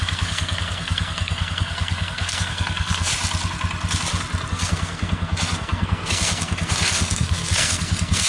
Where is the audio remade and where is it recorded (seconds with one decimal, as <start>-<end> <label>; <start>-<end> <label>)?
0.0-3.1 remade; 3.1-4.5 recorded; 4.5-8.3 remade